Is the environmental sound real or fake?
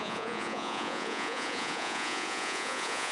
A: fake